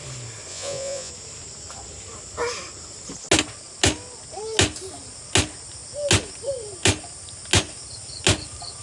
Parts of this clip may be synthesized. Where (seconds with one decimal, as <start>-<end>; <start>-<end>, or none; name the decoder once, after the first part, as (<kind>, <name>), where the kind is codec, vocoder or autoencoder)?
0.5-1.1 (vocoder, Vocos)